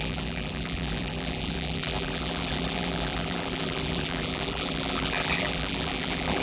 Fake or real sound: fake